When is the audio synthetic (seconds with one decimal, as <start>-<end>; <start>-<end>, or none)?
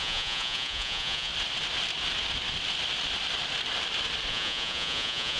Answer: 0.0-1.3; 4.3-5.4